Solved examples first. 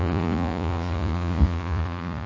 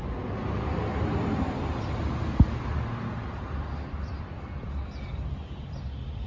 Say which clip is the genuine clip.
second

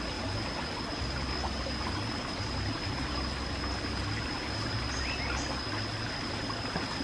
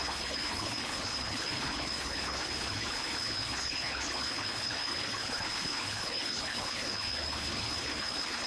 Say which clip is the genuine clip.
first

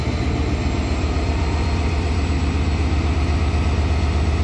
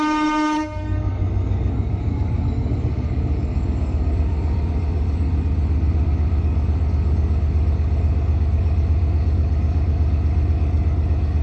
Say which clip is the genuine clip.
first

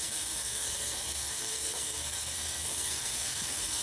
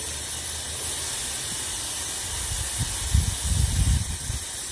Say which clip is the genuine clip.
second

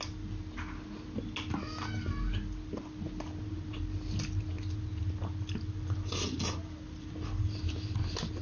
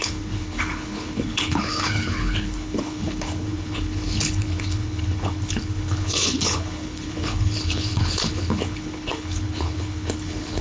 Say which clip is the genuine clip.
first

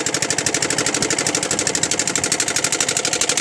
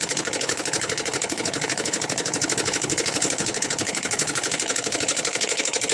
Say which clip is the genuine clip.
first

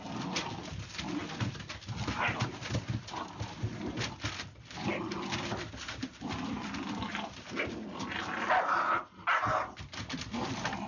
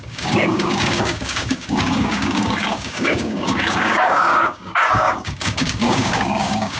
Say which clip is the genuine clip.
first